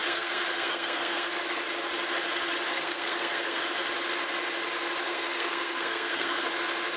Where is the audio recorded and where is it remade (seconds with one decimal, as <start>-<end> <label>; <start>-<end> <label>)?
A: 0.0-1.3 remade; 1.3-2.7 recorded; 2.7-3.6 remade; 3.6-5.1 recorded; 5.1-6.5 remade; 6.5-7.0 recorded